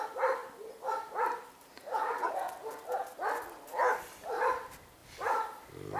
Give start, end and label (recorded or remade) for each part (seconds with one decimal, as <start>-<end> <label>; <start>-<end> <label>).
0.0-0.4 remade; 0.4-4.0 recorded; 4.0-6.0 remade